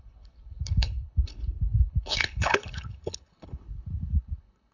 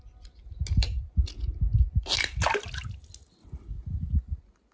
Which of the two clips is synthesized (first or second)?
first